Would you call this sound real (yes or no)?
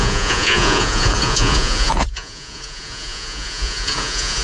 no